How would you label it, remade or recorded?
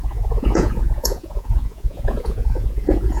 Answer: remade